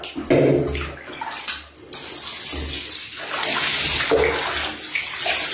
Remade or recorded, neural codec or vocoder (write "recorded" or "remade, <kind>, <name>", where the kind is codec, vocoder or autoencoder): recorded